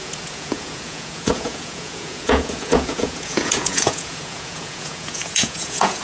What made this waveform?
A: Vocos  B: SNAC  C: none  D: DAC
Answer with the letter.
A